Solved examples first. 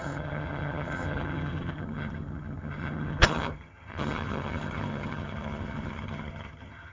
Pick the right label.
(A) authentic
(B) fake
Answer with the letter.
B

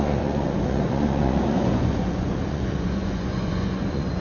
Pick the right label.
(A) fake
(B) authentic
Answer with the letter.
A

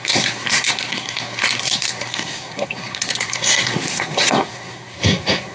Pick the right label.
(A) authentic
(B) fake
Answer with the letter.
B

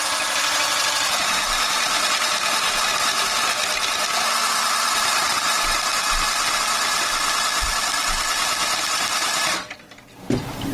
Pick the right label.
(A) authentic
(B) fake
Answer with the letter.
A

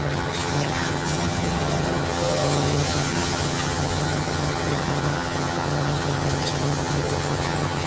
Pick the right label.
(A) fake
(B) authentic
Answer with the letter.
A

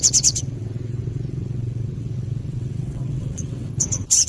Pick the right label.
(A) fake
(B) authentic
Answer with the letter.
A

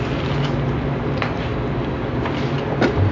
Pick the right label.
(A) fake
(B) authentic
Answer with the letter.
B